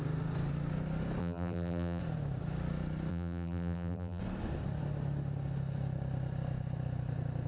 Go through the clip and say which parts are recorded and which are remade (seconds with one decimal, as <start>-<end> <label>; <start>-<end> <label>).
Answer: 0.0-1.2 recorded; 1.2-2.0 remade; 2.0-3.1 recorded; 3.1-4.2 remade; 4.2-7.5 recorded